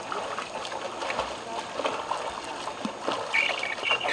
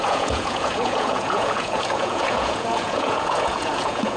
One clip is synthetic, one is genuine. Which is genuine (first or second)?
first